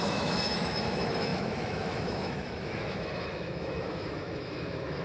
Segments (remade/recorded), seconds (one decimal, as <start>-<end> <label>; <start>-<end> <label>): 0.0-5.0 remade